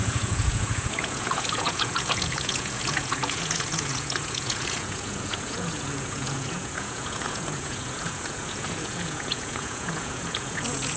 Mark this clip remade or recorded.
remade